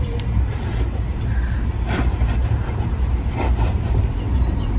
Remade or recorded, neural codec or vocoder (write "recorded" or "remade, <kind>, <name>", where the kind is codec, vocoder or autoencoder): remade, vocoder, BigVGAN v2